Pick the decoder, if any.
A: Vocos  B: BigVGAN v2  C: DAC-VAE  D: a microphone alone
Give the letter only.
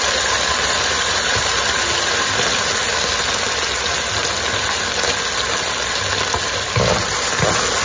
D